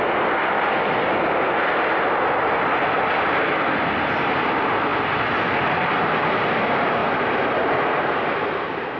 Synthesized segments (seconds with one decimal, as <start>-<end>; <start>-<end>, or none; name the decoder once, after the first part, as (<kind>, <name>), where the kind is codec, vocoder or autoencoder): none